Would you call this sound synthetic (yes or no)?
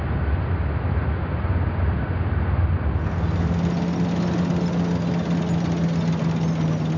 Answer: no